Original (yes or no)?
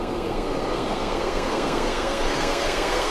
no